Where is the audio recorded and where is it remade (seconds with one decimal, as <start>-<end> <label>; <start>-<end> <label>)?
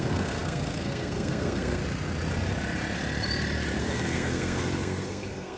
0.0-1.8 remade; 1.8-3.8 recorded; 3.8-5.6 remade